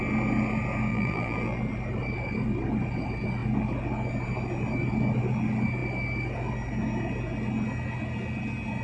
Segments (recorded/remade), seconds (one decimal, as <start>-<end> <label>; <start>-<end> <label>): 0.0-0.9 recorded; 0.9-1.6 remade; 1.6-8.8 recorded